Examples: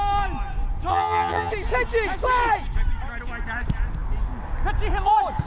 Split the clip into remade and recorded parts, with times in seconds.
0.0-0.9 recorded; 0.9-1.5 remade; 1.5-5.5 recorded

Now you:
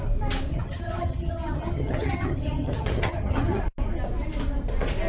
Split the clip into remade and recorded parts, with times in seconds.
0.0-0.5 recorded; 0.5-3.6 remade; 3.6-5.1 recorded

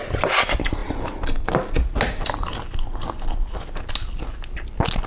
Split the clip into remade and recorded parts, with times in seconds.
0.0-5.1 recorded

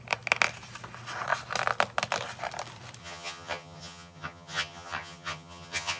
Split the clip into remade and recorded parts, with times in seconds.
0.0-3.0 recorded; 3.0-6.0 remade

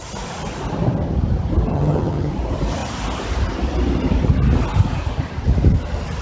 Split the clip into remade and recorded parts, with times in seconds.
0.0-1.7 recorded; 1.7-2.3 remade; 2.3-6.2 recorded

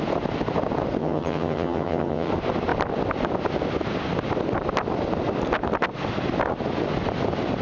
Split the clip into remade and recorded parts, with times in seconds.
0.0-1.0 recorded; 1.0-2.3 remade; 2.3-7.6 recorded

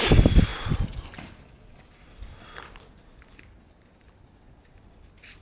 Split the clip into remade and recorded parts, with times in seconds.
0.0-5.4 recorded